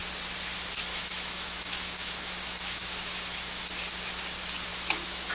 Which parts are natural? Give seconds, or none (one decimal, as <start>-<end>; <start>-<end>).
0.0-0.9; 3.7-4.7